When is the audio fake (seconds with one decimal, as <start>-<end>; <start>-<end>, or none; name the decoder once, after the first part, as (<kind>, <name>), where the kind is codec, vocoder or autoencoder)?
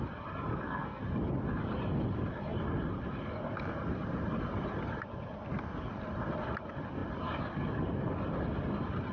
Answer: 0.5-1.0 (codec, SNAC)